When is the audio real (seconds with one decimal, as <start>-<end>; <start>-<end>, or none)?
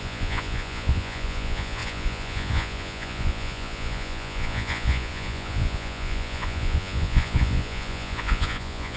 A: none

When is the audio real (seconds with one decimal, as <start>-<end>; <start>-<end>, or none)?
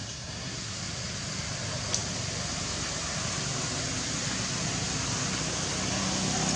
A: 0.8-6.6